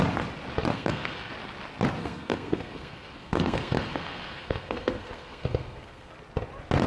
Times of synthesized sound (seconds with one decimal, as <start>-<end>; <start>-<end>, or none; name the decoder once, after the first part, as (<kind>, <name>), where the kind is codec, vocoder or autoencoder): 0.7-1.3 (codec, SNAC); 2.0-6.1

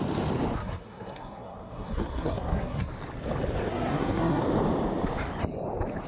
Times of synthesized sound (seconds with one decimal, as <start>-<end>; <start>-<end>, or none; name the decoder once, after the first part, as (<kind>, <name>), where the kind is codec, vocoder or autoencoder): 0.6-2.9 (codec, SNAC); 3.7-4.4

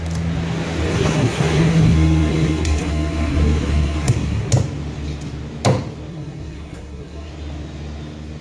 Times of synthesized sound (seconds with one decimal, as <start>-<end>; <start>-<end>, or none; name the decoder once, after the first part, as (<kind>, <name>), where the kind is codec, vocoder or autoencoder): 0.9-4.5 (codec, SNAC); 6.1-7.3

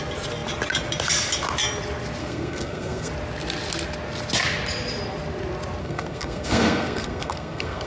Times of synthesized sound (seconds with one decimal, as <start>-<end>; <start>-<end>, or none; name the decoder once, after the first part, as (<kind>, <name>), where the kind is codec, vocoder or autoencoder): 2.2-3.1 (codec, SNAC); 5.8-7.9

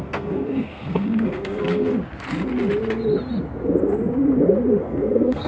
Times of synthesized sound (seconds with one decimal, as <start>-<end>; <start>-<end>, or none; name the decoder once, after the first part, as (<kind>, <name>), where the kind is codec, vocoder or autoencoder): 0.0-1.9 (codec, SNAC); 4.8-5.5

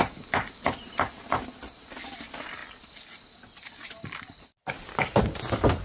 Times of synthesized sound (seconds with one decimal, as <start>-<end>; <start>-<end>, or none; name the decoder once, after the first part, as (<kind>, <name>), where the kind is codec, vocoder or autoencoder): none